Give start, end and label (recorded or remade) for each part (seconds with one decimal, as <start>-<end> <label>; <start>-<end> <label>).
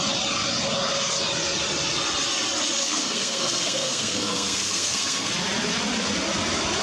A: 0.0-2.8 recorded; 2.8-5.3 remade; 5.3-6.8 recorded